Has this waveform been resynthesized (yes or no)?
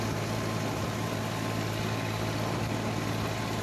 no